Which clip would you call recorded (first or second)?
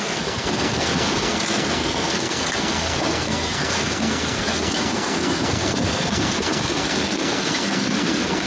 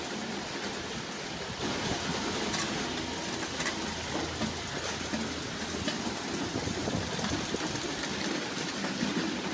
second